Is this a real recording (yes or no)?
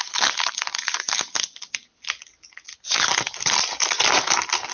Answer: yes